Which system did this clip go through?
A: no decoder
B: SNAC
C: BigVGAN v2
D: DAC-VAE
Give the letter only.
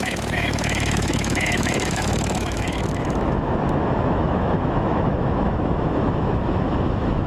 D